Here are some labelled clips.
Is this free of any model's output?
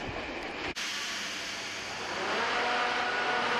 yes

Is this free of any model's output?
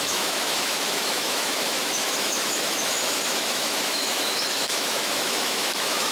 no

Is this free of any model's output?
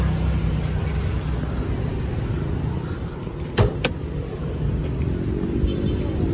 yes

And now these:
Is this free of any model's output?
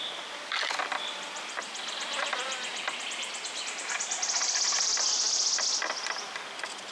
yes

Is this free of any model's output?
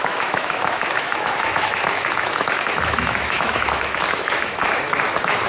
no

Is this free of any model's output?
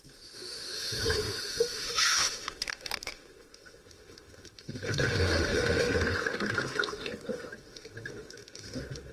no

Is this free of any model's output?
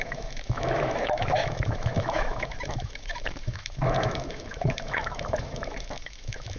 no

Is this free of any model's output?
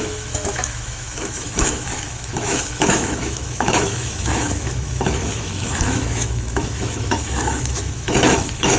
no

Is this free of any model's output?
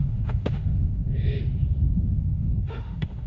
no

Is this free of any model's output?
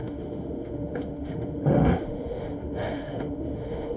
no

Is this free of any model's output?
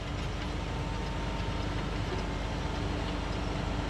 yes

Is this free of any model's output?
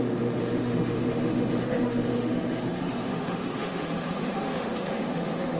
no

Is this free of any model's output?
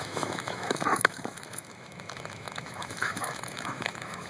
no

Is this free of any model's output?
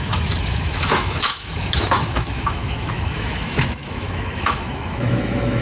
no